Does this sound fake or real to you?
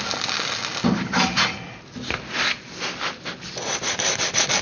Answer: real